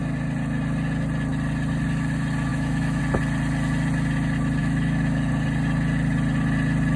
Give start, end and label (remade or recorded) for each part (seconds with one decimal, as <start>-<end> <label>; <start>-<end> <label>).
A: 0.0-2.5 recorded; 2.5-3.0 remade; 3.0-4.6 recorded; 4.6-5.3 remade; 5.3-7.0 recorded